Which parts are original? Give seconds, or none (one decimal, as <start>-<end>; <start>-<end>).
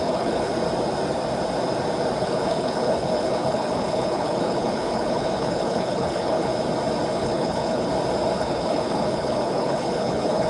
0.5-2.2; 6.5-7.1; 7.9-8.4